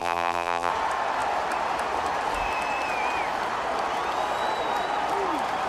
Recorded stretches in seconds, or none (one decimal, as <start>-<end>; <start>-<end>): 0.7-5.7